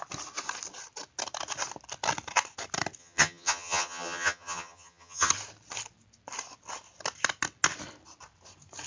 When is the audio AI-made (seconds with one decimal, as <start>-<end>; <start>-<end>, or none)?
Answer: 3.0-5.3